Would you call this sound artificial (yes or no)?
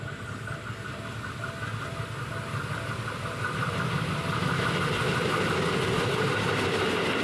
no